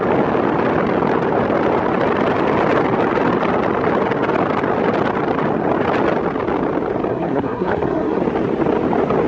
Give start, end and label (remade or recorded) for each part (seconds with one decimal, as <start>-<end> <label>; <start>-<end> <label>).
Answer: 0.0-7.1 recorded; 7.1-8.2 remade; 8.2-9.3 recorded